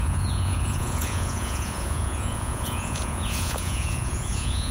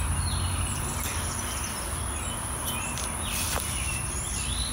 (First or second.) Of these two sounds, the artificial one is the first